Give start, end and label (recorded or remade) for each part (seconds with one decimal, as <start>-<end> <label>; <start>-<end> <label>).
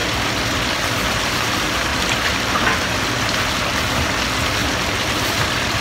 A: 0.0-1.2 remade; 1.2-1.9 recorded; 1.9-3.6 remade; 3.6-4.6 recorded; 4.6-5.8 remade